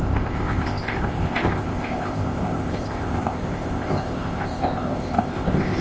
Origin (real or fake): fake